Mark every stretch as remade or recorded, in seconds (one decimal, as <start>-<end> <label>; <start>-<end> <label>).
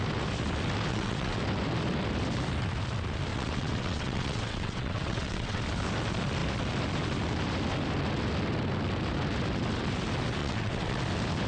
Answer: 0.0-0.9 recorded; 0.9-1.4 remade; 1.4-3.3 recorded; 3.3-5.6 remade; 5.6-10.4 recorded; 10.4-11.0 remade; 11.0-11.5 recorded